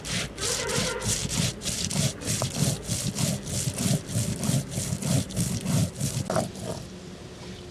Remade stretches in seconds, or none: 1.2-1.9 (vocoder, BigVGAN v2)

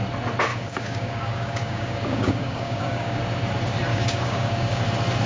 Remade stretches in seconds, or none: 0.5-3.2 (codec, DAC); 3.9-4.8

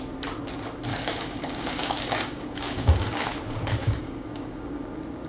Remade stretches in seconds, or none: 0.9-3.4 (codec, DAC); 3.8-4.8

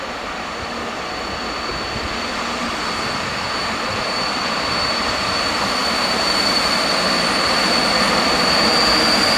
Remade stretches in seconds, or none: 5.8-7.0 (vocoder, BigVGAN v2)